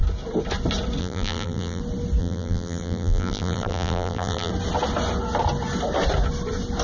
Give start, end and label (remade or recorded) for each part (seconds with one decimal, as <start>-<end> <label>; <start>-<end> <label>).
0.0-1.0 recorded; 1.0-1.8 remade; 1.8-2.2 recorded; 2.2-4.5 remade; 4.5-6.8 recorded